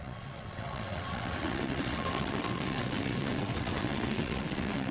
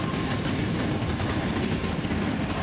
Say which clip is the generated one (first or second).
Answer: first